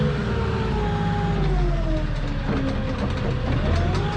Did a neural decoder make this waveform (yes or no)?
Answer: no